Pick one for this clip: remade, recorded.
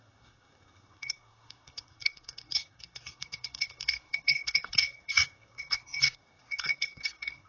remade